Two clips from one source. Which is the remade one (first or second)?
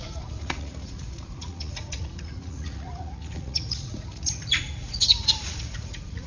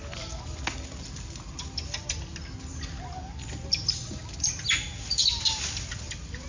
first